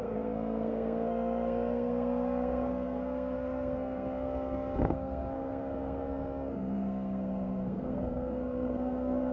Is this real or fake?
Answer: fake